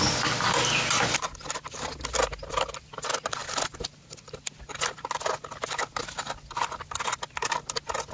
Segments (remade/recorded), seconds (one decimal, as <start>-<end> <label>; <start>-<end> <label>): 0.0-8.1 recorded